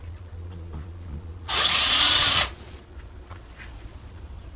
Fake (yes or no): yes